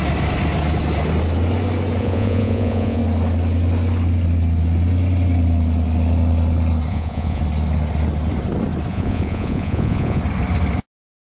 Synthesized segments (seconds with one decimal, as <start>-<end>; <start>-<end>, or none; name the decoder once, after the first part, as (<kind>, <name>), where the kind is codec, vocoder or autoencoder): 2.0-3.0 (vocoder, Vocos); 6.9-7.4; 8.9-10.2